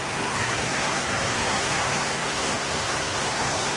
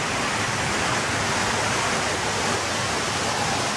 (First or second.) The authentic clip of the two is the second